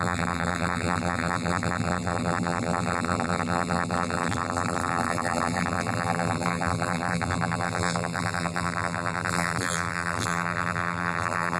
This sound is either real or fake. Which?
fake